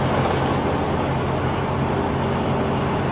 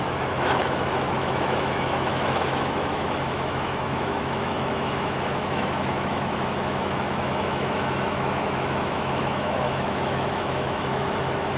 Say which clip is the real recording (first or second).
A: first